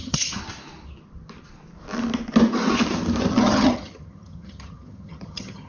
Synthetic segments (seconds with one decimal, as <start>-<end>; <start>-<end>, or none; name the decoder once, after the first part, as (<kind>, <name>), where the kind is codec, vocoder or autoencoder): 0.0-0.4 (vocoder, HiFi-GAN); 3.3-5.7